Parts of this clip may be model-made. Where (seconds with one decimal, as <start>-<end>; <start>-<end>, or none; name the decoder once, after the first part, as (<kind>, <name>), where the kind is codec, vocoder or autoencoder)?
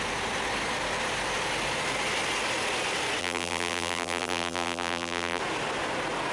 3.2-5.4 (vocoder, BigVGAN v2)